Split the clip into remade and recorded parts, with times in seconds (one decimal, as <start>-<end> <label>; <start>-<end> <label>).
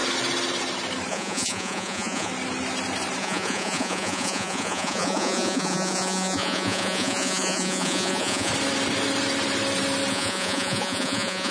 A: 0.0-1.1 recorded; 1.1-2.3 remade; 2.3-3.2 recorded; 3.2-8.5 remade; 8.5-10.1 recorded; 10.1-11.5 remade